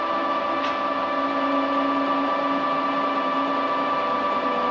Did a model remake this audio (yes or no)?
no